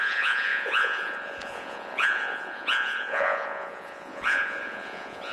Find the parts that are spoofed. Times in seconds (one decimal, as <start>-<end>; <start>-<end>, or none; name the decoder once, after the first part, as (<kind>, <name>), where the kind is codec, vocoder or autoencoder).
0.0-5.3 (vocoder, Vocos)